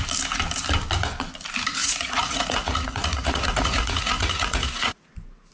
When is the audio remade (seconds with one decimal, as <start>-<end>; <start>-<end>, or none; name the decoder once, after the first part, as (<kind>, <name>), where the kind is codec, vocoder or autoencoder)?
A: 1.8-5.1 (vocoder, Vocos)